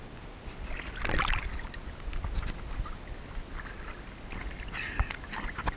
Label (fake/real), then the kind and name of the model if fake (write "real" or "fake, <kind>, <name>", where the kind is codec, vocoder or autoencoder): real